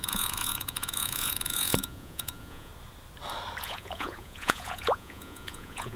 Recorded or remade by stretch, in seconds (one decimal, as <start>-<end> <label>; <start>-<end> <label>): 0.0-2.7 remade; 2.7-3.6 recorded; 3.6-6.0 remade